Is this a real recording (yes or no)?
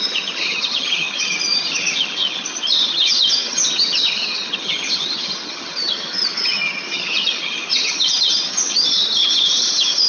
no